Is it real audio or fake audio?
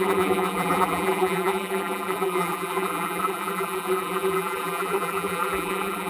fake